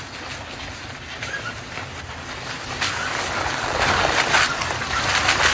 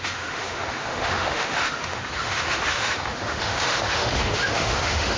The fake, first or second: second